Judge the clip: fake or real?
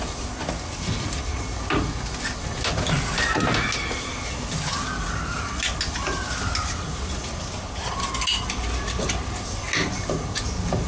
real